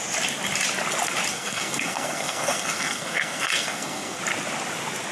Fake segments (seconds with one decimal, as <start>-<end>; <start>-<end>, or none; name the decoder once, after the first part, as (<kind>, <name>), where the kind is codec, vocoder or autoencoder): 1.3-4.2 (codec, SNAC)